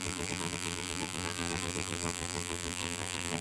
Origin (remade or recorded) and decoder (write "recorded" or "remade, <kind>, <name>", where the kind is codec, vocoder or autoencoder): remade, vocoder, BigVGAN v2